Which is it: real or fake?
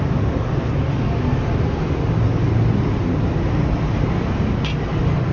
real